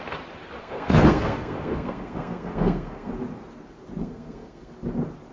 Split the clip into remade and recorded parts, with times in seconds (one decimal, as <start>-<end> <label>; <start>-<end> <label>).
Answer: 0.0-0.6 recorded; 0.6-3.1 remade; 3.1-4.0 recorded; 4.0-4.7 remade; 4.7-5.3 recorded